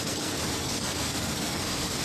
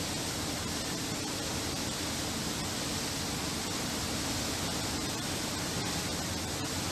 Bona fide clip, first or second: second